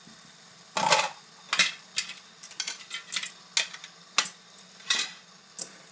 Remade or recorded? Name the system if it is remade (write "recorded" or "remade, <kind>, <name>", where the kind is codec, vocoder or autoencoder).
recorded